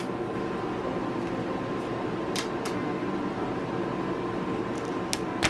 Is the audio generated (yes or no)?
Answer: no